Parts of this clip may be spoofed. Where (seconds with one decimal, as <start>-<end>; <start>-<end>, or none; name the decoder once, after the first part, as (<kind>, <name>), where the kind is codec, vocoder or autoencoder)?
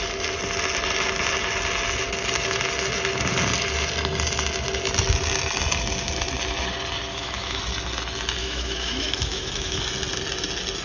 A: 7.1-7.6 (autoencoder, DAC-VAE); 8.4-9.8